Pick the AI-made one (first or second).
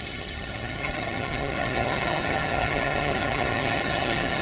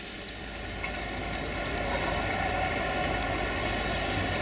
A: first